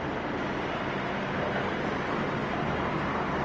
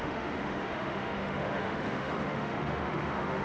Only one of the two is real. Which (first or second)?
first